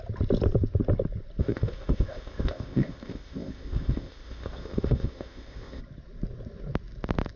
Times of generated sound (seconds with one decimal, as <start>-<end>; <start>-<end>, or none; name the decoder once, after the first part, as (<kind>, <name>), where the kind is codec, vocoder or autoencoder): 1.4-5.8 (codec, ZipCodec)